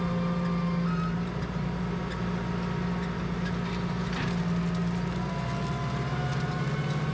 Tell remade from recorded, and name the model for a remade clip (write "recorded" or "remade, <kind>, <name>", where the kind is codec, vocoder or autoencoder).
recorded